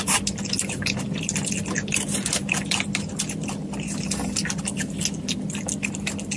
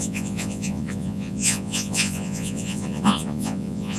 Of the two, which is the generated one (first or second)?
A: second